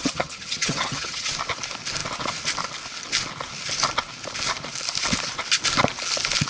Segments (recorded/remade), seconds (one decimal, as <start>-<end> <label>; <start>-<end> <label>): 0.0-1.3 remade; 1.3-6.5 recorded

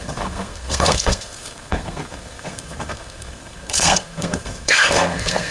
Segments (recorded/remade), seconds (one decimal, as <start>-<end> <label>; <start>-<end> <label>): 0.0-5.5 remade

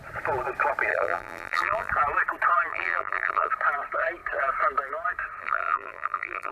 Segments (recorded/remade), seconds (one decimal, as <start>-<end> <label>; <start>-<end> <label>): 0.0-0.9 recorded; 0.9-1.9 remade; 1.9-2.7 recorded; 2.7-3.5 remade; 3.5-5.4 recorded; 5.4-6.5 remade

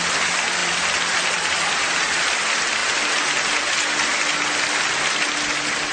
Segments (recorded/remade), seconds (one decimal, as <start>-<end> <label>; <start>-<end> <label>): 0.0-0.6 recorded; 0.6-2.4 remade; 2.4-5.9 recorded